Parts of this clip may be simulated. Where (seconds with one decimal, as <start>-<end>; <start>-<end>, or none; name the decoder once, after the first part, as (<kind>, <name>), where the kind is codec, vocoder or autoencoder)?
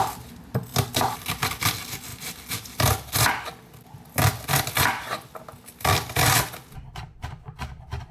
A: none